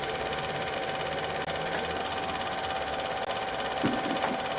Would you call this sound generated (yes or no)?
no